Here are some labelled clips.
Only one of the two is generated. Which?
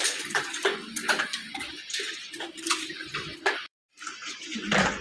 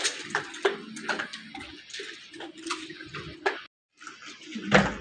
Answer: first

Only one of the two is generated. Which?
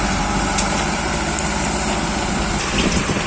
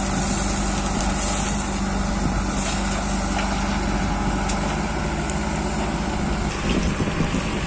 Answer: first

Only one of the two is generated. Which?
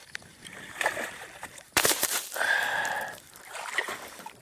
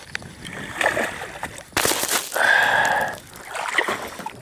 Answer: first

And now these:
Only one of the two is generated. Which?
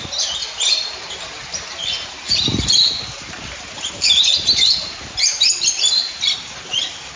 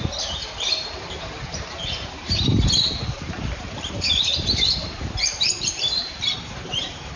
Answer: second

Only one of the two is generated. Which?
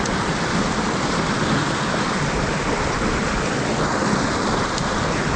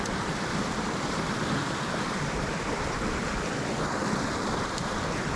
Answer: second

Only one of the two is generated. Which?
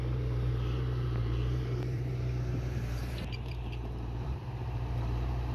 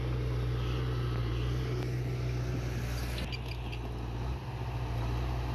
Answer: first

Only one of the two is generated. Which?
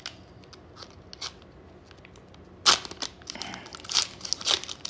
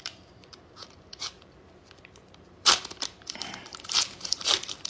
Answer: second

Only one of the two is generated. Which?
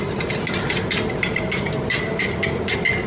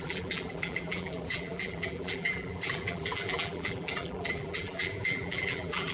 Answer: second